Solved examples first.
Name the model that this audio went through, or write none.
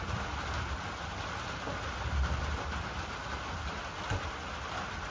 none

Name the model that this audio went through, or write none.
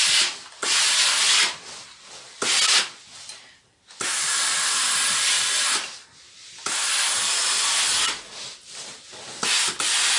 none